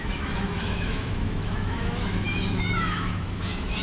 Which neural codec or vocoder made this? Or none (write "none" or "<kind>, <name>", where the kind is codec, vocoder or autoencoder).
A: autoencoder, DAC-VAE